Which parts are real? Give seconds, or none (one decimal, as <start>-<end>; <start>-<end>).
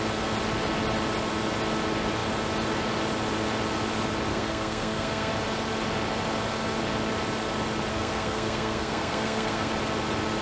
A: 0.0-4.3; 5.3-7.9; 9.7-10.4